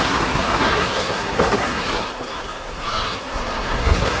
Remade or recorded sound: remade